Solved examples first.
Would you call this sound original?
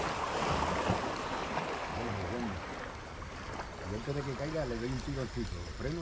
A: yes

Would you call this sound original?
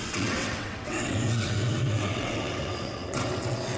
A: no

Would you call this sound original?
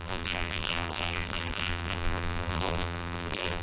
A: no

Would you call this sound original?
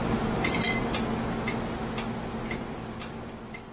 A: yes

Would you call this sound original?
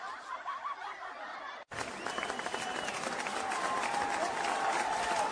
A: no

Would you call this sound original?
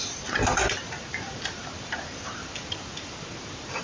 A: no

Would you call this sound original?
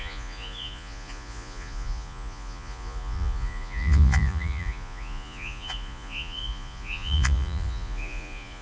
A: no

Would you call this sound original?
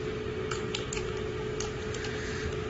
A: yes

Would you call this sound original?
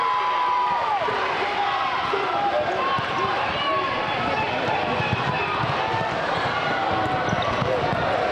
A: yes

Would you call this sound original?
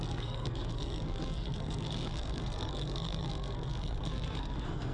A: no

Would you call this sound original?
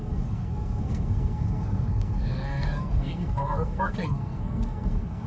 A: no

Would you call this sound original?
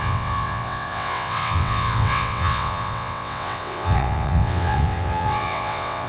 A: no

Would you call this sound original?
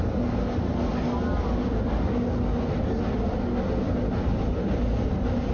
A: yes